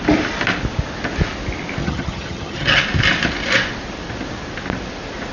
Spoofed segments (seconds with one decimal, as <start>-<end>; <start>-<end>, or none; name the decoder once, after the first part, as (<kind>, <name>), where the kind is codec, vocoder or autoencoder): 1.8-2.8 (vocoder, HiFi-GAN)